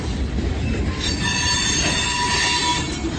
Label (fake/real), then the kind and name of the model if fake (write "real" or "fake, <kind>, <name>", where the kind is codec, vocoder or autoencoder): real